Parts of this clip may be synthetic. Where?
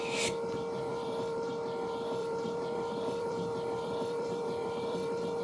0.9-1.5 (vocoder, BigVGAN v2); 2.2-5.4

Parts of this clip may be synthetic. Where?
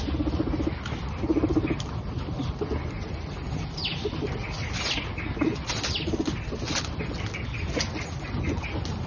1.3-2.3 (vocoder, BigVGAN v2)